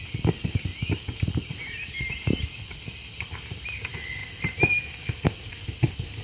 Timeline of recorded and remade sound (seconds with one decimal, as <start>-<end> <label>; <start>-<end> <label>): 0.0-6.2 recorded